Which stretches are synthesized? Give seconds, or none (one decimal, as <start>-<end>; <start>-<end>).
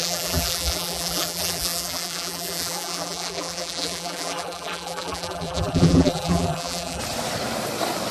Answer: 0.0-7.0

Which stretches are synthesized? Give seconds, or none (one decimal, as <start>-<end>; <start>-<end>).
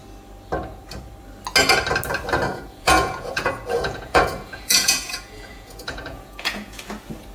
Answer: 2.5-6.8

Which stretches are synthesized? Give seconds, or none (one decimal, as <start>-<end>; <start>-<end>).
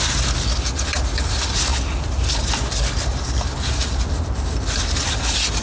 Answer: none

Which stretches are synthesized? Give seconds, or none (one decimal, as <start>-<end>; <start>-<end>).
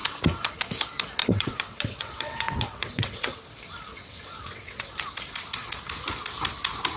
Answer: 1.2-3.4; 3.9-4.9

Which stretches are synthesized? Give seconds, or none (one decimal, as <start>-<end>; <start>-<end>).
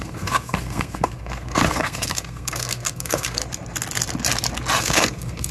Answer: 0.0-3.4; 4.8-5.5